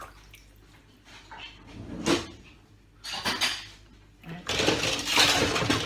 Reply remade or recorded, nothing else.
recorded